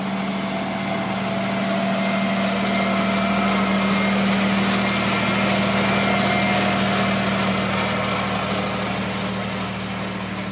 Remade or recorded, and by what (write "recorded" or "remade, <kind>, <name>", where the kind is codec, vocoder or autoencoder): recorded